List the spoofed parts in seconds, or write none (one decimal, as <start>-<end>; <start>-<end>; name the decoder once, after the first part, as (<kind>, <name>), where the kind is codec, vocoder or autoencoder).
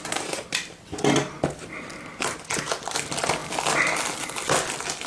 none